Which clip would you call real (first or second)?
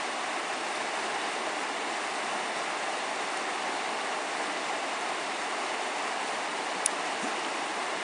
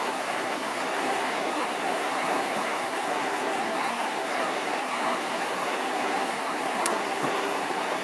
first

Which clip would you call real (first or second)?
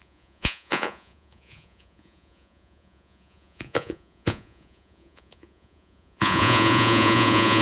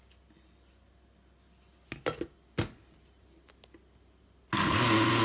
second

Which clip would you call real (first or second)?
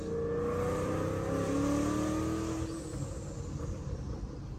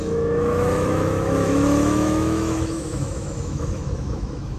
first